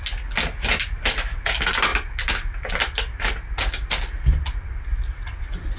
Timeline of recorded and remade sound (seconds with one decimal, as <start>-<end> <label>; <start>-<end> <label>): 0.0-5.8 recorded